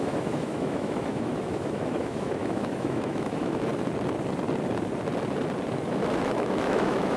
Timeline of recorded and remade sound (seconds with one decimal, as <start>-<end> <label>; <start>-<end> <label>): 0.0-3.7 remade; 3.7-5.9 recorded; 5.9-7.2 remade